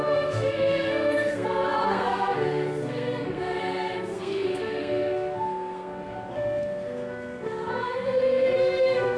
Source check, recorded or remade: remade